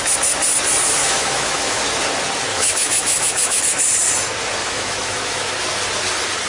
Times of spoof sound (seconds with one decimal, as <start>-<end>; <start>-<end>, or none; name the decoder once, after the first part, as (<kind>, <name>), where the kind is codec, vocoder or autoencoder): 1.0-1.8 (autoencoder, DAC-VAE); 2.5-3.6; 4.6-5.5